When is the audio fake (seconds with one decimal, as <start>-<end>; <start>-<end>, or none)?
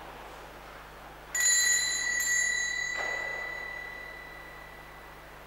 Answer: none